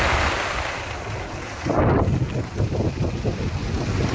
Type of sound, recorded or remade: recorded